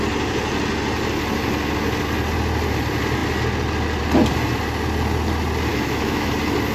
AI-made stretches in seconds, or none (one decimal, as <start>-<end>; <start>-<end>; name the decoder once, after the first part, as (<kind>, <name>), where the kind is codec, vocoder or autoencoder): 5.7-6.3 (autoencoder, DAC-VAE)